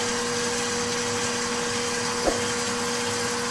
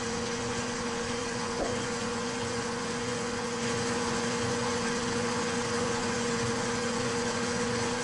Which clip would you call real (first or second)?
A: first